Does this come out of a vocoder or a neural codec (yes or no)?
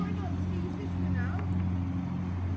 no